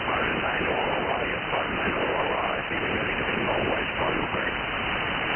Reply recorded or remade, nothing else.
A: remade